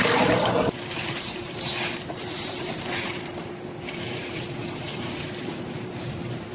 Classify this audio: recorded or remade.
remade